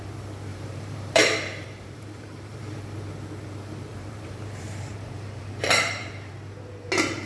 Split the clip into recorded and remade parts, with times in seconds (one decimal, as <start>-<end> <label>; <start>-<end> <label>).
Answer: 0.0-0.5 recorded; 0.5-2.8 remade; 2.8-3.9 recorded; 3.9-6.3 remade; 6.3-7.3 recorded